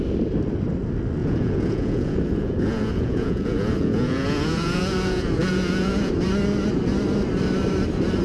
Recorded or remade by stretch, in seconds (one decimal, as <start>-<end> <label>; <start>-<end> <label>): 0.0-1.2 recorded; 1.2-6.1 remade; 6.1-8.2 recorded